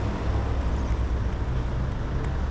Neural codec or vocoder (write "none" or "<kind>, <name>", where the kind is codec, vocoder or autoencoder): none